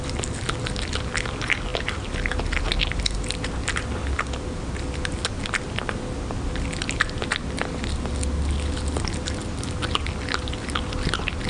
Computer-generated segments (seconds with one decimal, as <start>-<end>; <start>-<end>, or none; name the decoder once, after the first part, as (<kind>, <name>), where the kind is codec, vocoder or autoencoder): none